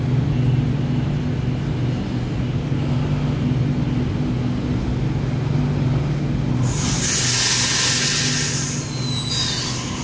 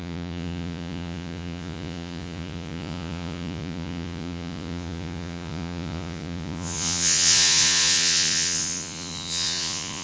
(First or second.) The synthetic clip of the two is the second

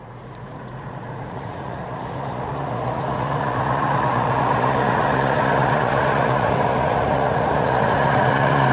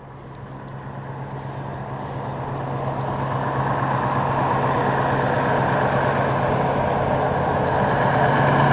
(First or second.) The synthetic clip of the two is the first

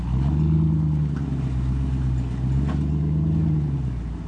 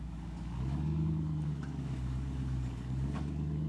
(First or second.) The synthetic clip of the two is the second